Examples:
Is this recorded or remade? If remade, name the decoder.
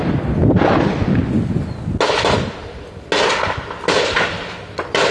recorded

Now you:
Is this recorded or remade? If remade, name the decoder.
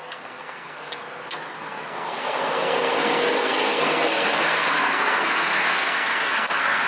remade, codec, SNAC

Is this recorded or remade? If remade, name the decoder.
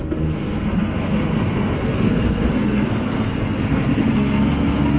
remade, codec, SNAC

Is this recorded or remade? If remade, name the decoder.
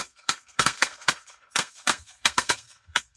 remade, codec, SNAC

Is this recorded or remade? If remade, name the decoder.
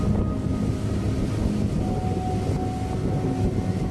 recorded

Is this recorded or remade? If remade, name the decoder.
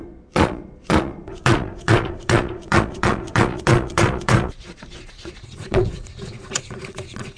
remade, vocoder, Vocos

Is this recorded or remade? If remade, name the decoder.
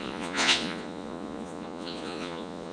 remade, vocoder, Vocos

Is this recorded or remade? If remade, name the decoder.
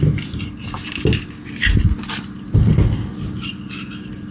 recorded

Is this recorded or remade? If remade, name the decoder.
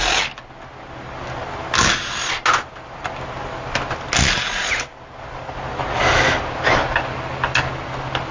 recorded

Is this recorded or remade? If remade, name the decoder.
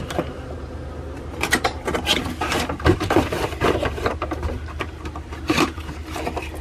remade, vocoder, BigVGAN v2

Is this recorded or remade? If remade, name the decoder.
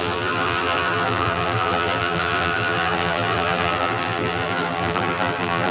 remade, vocoder, BigVGAN v2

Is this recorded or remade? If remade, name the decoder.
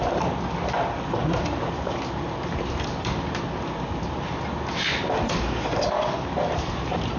recorded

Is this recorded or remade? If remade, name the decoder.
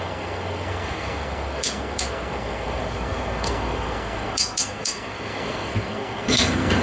remade, codec, SNAC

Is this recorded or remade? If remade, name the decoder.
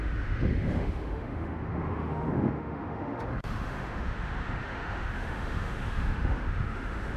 remade, autoencoder, DAC-VAE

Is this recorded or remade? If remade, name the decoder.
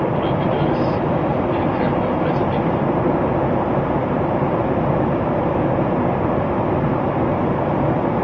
recorded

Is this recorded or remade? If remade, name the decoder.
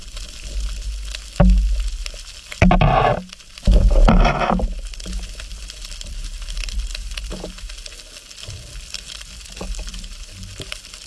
recorded